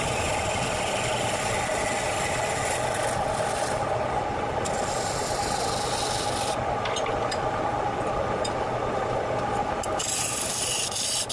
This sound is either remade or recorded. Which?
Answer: recorded